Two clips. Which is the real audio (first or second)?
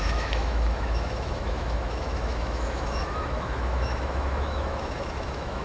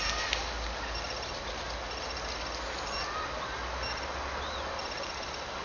second